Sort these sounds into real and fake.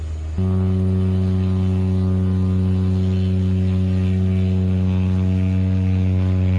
real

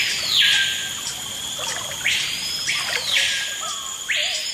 fake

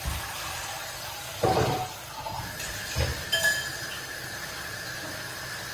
real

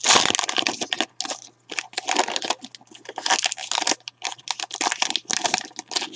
real